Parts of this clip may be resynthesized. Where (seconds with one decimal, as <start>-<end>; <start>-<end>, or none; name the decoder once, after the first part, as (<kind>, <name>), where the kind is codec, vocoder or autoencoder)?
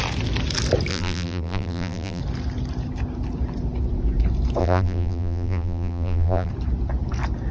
0.9-2.2 (vocoder, BigVGAN v2); 4.6-6.5